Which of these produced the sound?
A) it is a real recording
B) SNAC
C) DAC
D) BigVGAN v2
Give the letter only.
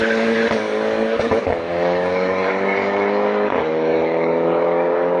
C